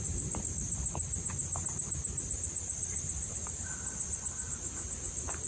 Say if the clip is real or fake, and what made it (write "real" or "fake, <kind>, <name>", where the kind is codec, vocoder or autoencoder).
real